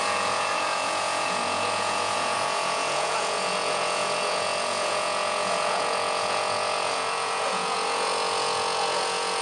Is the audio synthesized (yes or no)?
yes